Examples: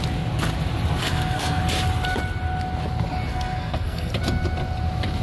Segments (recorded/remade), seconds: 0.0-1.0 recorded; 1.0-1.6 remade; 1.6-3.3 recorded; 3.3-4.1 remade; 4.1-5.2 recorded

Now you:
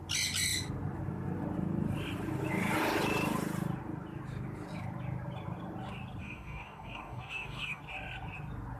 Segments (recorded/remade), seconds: 0.0-6.2 recorded; 6.2-7.8 remade; 7.8-8.8 recorded

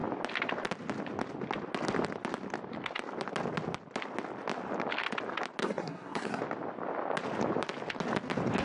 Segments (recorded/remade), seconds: 0.0-5.6 recorded; 5.6-6.4 remade; 6.4-8.6 recorded

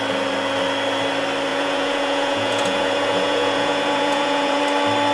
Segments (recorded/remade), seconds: 0.0-1.5 recorded; 1.5-4.6 remade; 4.6-5.1 recorded

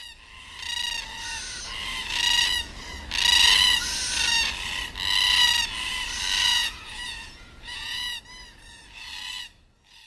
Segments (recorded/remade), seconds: 0.0-6.5 recorded; 6.5-8.2 remade; 8.2-10.1 recorded

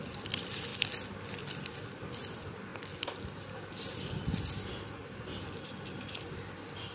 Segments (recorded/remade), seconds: 0.0-0.7 remade; 0.7-1.2 recorded; 1.2-6.9 remade

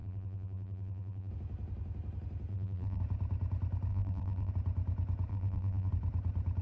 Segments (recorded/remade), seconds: 0.0-1.3 remade; 1.3-2.5 recorded; 2.5-3.0 remade; 3.0-3.9 recorded; 3.9-4.5 remade; 4.5-5.3 recorded; 5.3-5.9 remade; 5.9-6.6 recorded

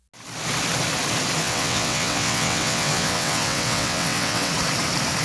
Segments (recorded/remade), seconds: 0.0-1.4 recorded; 1.4-4.5 remade; 4.5-5.2 recorded